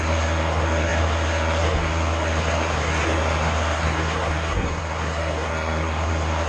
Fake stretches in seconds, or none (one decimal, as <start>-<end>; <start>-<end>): 0.0-6.5